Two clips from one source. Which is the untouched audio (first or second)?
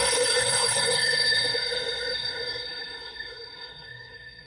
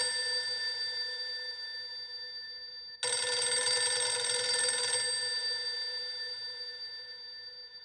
second